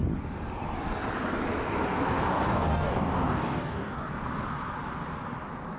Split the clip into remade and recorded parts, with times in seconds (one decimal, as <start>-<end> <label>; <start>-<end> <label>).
0.0-2.3 recorded; 2.3-4.1 remade; 4.1-5.8 recorded